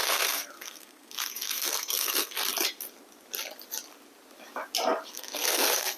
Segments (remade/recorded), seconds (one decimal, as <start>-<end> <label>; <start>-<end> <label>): 0.0-2.4 remade; 2.4-5.1 recorded; 5.1-6.0 remade